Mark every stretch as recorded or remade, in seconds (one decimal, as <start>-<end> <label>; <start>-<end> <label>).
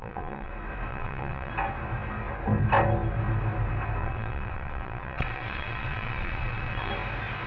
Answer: 0.0-0.5 remade; 0.5-0.9 recorded; 0.9-1.5 remade; 1.5-4.0 recorded; 4.0-6.9 remade; 6.9-7.5 recorded